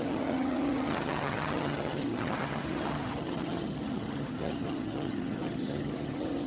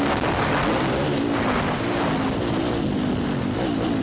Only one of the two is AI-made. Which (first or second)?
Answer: first